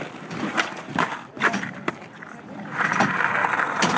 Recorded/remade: remade